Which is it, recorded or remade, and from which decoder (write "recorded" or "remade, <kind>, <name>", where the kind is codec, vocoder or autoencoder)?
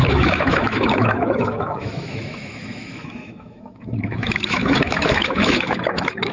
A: remade, autoencoder, DAC-VAE